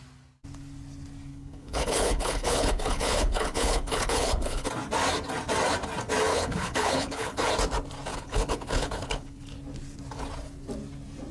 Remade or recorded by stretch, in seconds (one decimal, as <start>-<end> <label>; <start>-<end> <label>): 0.0-1.3 recorded; 1.3-4.7 remade; 4.7-6.3 recorded; 6.3-7.5 remade; 7.5-8.1 recorded; 8.1-9.4 remade; 9.4-11.3 recorded